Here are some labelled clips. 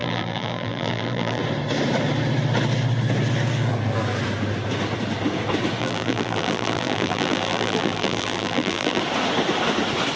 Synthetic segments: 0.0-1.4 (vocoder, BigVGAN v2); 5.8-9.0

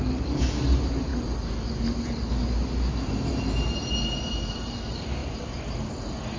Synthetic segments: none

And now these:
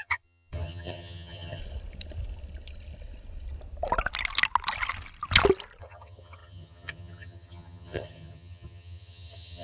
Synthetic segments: 0.0-1.6 (vocoder, HiFi-GAN); 5.8-9.6

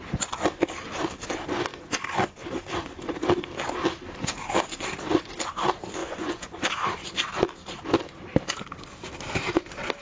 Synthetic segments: 6.0-6.6 (vocoder, Vocos)

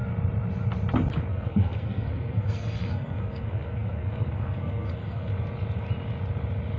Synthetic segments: 1.3-5.3 (codec, SNAC)

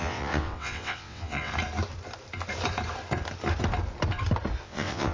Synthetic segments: 0.0-1.5 (vocoder, WaveNeXt); 4.6-5.1